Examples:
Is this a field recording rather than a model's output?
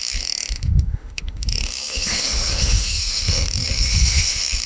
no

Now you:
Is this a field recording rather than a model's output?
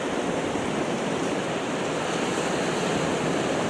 yes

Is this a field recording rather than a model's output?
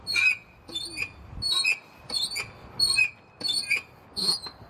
yes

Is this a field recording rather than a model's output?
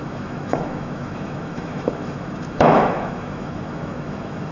no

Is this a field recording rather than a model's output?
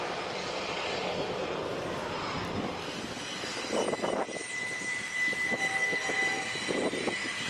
yes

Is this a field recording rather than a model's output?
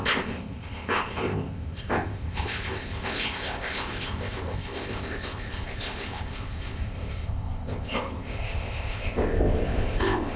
no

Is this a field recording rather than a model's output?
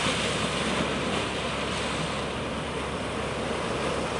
yes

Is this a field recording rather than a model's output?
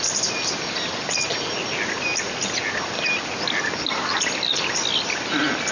yes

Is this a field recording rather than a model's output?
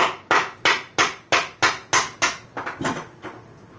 yes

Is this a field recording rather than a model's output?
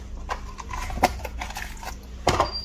yes